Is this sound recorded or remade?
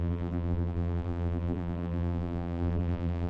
remade